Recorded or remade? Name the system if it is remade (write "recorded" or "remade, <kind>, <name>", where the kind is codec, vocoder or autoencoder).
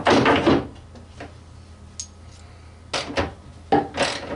recorded